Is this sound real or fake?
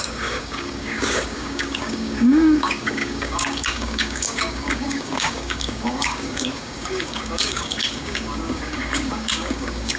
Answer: fake